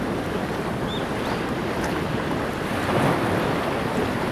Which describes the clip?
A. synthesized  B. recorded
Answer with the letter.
B